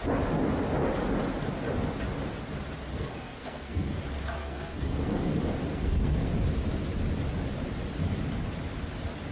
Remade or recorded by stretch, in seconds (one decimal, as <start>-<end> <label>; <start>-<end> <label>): 0.0-2.9 recorded; 2.9-4.0 remade; 4.0-4.4 recorded; 4.4-5.3 remade; 5.3-5.7 recorded; 5.7-6.3 remade; 6.3-9.3 recorded